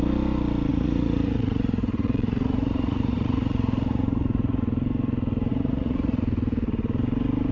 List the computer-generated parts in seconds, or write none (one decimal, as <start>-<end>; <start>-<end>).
0.7-4.6; 5.5-6.2